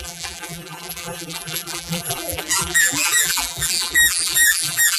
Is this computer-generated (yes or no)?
yes